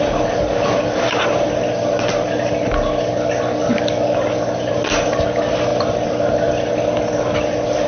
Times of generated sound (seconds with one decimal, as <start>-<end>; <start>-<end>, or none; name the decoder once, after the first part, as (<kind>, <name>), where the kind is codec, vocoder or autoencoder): none